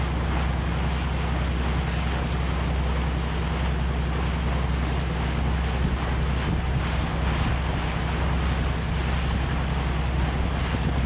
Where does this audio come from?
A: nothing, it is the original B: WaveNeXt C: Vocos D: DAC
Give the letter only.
A